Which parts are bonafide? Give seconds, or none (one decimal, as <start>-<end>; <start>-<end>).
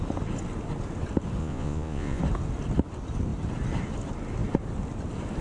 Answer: 0.0-1.4; 2.2-5.4